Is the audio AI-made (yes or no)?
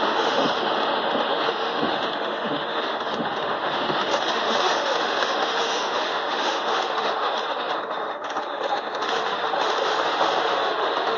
yes